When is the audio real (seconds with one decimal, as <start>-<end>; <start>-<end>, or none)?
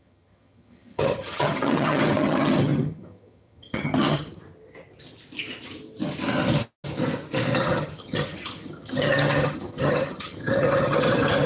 4.4-7.6